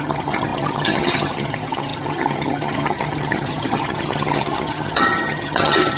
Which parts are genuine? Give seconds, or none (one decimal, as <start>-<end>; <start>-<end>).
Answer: none